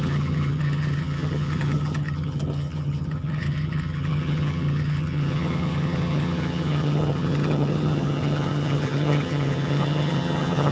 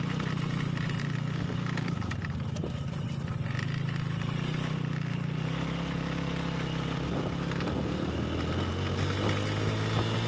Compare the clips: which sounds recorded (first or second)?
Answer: second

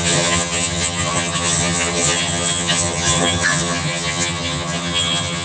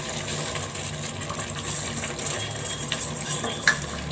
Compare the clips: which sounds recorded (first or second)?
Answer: second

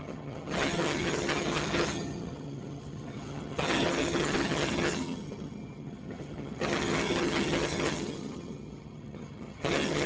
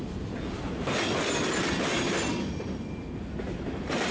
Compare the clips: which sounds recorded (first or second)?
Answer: second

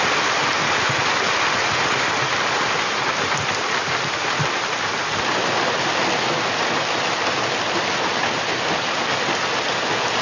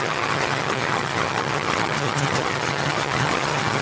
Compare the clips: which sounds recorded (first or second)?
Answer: first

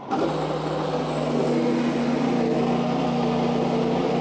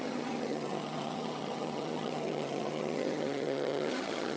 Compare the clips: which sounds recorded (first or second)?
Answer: first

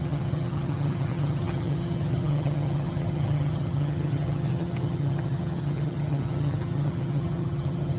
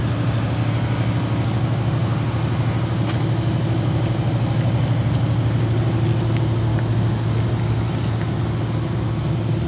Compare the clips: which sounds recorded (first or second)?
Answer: second